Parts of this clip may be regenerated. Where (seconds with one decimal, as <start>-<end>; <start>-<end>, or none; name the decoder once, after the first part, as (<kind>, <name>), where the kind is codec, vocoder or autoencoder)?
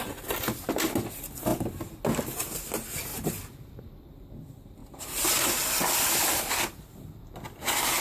3.1-3.9 (vocoder, BigVGAN v2); 4.8-6.4